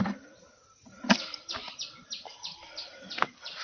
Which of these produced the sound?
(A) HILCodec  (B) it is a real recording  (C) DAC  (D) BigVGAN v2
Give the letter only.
B